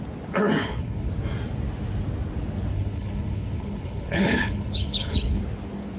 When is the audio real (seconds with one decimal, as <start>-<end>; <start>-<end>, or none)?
0.0-0.6; 1.1-2.7; 5.4-6.0